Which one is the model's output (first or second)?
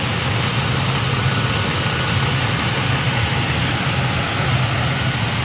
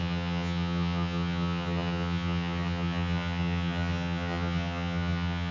second